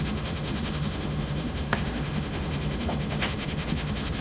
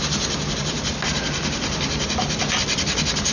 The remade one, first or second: first